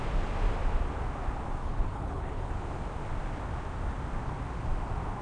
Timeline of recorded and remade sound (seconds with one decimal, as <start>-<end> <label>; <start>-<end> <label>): 0.0-1.6 recorded; 1.6-2.5 remade; 2.5-5.2 recorded